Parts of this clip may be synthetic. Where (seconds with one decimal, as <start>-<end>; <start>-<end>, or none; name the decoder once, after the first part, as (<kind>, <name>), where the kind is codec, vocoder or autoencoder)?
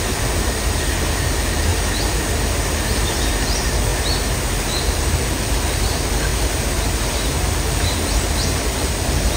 0.0-1.7 (vocoder, BigVGAN v2); 3.3-3.9; 4.5-9.4